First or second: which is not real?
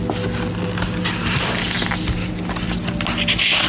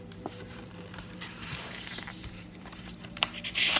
second